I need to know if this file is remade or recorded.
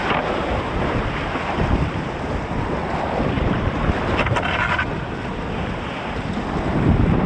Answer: recorded